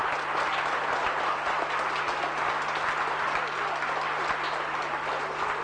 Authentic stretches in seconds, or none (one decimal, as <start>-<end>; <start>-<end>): 0.0-5.6